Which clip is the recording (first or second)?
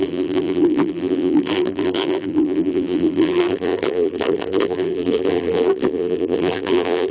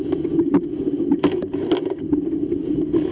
second